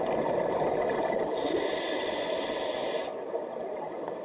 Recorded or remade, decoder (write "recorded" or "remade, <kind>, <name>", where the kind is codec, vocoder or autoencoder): recorded